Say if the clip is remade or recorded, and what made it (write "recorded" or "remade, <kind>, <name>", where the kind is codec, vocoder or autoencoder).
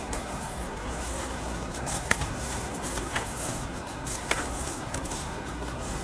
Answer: remade, codec, SNAC